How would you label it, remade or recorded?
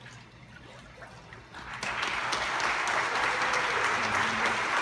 recorded